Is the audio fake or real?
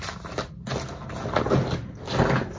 real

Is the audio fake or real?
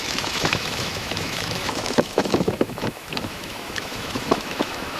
fake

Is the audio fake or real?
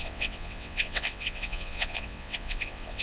fake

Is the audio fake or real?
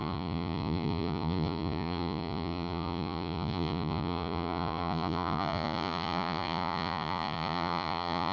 fake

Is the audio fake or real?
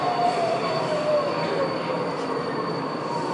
fake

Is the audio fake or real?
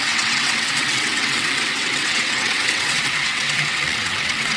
fake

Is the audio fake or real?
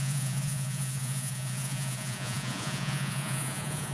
fake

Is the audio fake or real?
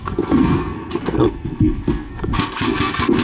fake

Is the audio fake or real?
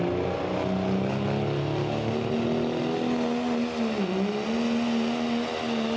real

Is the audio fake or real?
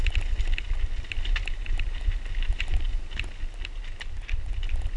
real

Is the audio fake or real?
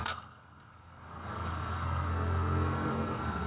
fake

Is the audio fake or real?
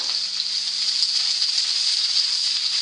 real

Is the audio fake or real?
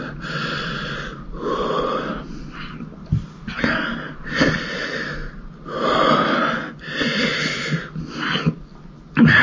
real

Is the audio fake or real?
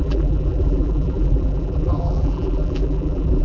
fake